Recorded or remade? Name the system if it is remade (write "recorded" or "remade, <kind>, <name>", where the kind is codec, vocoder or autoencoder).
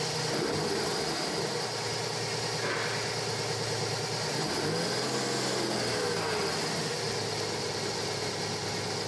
recorded